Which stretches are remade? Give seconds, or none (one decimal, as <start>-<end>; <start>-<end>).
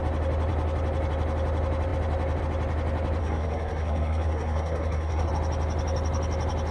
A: 3.2-5.3